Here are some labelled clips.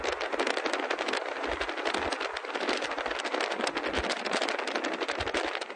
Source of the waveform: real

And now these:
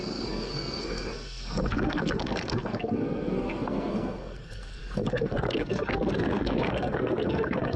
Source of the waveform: fake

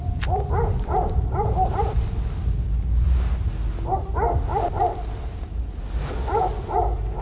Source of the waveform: real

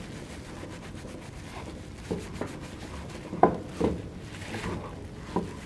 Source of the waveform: real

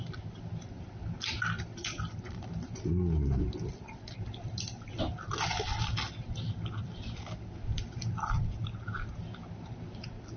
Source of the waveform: real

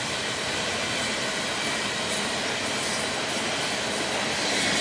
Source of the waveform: real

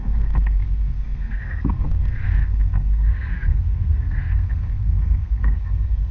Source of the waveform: fake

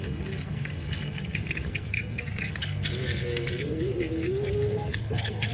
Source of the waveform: fake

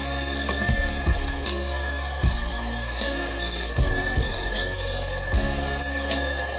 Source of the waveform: fake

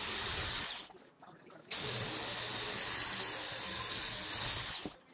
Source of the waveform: real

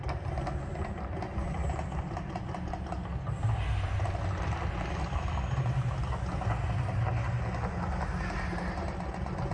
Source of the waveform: real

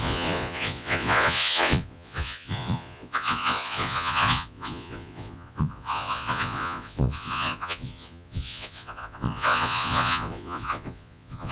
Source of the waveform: fake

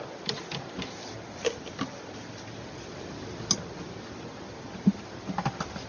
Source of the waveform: real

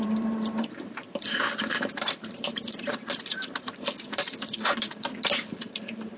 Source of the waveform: fake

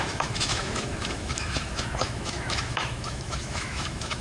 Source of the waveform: fake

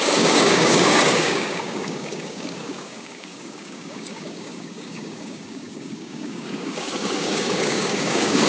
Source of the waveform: fake